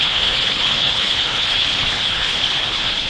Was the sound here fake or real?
fake